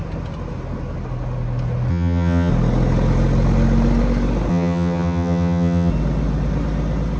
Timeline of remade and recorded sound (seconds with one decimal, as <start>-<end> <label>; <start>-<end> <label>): 0.0-1.9 recorded; 1.9-2.5 remade; 2.5-4.5 recorded; 4.5-5.9 remade; 5.9-7.2 recorded